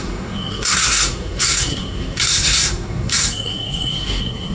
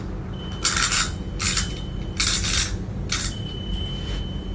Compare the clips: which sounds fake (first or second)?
first